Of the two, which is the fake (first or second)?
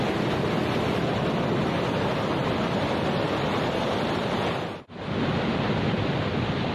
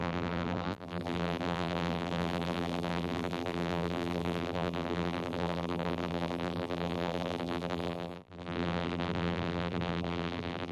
second